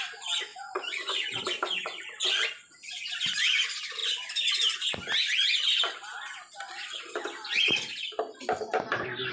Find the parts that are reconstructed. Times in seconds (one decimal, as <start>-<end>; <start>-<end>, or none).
0.5-1.4